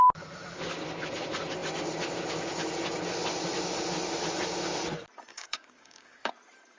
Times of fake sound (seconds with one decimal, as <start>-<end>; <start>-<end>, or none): 5.3-6.3